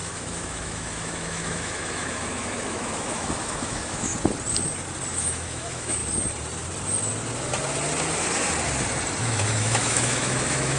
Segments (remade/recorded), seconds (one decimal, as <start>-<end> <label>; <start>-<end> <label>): 0.0-4.1 remade; 4.1-5.1 recorded; 5.1-6.0 remade; 6.0-9.2 recorded; 9.2-10.8 remade